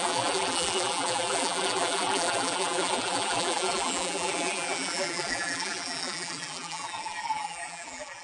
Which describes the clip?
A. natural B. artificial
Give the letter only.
B